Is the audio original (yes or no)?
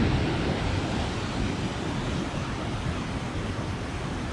yes